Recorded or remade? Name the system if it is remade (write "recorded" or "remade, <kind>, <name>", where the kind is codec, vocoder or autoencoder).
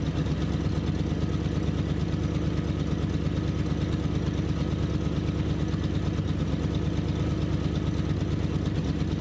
recorded